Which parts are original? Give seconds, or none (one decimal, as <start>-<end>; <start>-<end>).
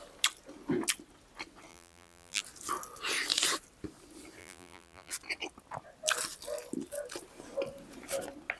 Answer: 0.0-1.7; 2.4-4.4; 5.1-8.6